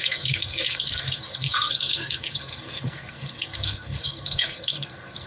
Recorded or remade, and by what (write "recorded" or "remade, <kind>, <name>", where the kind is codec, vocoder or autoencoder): remade, codec, SNAC